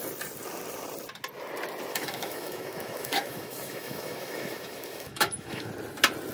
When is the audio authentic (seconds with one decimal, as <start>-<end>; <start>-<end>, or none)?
0.0-1.9; 5.7-6.3